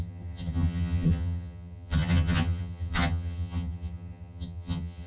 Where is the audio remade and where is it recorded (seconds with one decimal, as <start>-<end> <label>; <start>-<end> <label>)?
0.0-5.1 remade